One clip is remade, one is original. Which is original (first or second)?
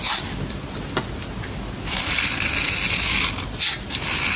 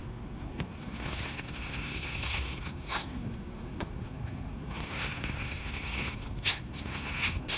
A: first